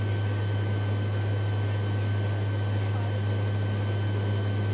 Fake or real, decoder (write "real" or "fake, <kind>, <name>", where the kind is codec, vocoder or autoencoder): real